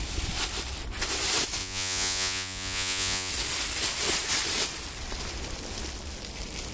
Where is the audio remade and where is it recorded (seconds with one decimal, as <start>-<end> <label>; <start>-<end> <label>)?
0.0-1.6 recorded; 1.6-3.3 remade; 3.3-6.7 recorded